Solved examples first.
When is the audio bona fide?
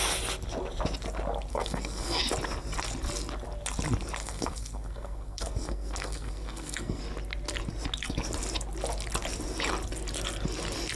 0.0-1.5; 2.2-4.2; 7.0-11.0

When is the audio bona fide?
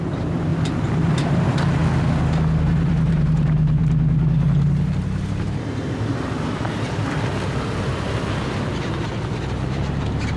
0.5-1.0; 1.8-2.6; 3.8-8.7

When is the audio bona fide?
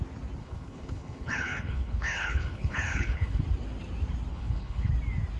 0.0-0.4; 3.4-4.3; 4.9-5.4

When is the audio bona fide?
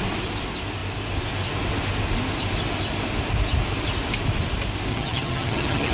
0.0-4.9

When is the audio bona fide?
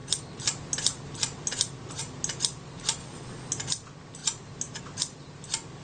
0.0-3.0; 3.5-5.8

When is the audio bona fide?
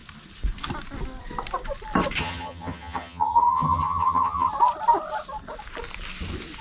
0.0-2.2; 4.5-6.6